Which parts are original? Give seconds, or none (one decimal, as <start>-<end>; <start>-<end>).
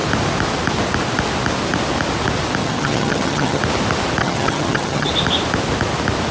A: 0.0-2.6; 3.6-4.2; 5.1-6.3